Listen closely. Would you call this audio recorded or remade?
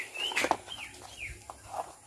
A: recorded